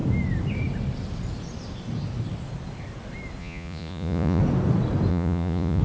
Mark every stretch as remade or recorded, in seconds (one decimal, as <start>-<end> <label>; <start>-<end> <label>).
0.0-3.4 recorded; 3.4-4.4 remade; 4.4-5.1 recorded; 5.1-5.8 remade